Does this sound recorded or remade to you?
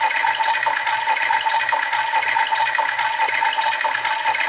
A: recorded